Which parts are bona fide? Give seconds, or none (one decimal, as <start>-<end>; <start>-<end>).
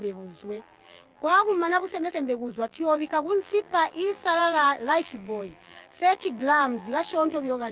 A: none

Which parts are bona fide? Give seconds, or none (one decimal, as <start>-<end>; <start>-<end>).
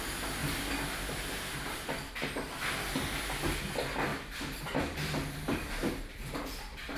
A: 0.0-0.4; 2.1-4.1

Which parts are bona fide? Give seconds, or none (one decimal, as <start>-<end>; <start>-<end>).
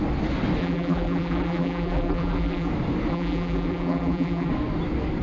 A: 0.0-0.6; 2.7-3.1; 4.5-5.2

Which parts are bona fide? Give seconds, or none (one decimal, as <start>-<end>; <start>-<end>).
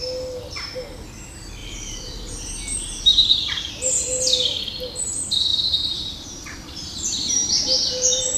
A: 0.0-1.6; 3.7-5.5